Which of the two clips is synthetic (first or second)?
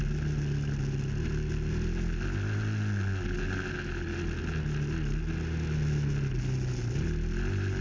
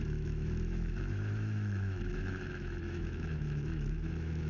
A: second